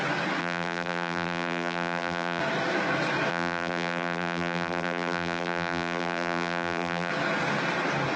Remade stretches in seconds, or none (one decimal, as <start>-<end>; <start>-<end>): 0.4-2.4; 3.3-7.1